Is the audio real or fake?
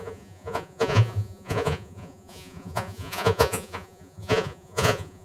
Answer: fake